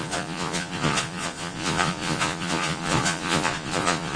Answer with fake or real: fake